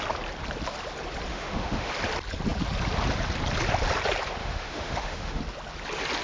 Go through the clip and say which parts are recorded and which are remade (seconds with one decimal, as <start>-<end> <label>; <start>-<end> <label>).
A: 0.0-1.3 recorded; 1.3-1.9 remade; 1.9-4.4 recorded; 4.4-5.4 remade; 5.4-6.2 recorded